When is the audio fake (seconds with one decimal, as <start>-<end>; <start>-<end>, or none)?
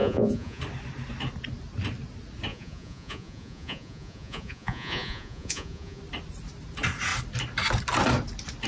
0.0-0.6; 2.5-6.0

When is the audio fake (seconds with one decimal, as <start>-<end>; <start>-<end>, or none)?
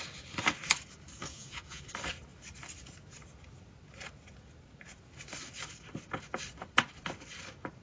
1.3-1.8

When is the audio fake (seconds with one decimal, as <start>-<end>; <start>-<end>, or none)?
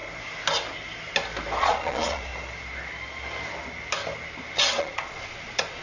1.6-2.3; 4.8-5.8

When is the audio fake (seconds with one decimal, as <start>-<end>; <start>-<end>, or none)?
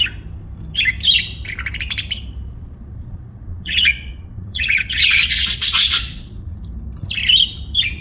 2.5-6.6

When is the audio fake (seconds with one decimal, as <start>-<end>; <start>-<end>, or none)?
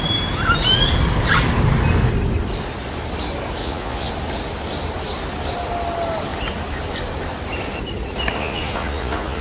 3.6-4.1; 8.4-9.4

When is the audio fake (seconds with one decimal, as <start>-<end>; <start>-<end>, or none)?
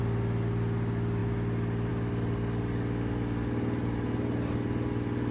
none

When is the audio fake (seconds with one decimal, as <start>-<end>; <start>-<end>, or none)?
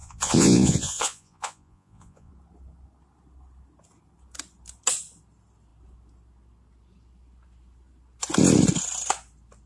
0.0-2.3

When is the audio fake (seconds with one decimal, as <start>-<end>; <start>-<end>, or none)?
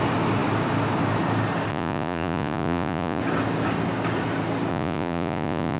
1.7-3.2; 4.7-5.8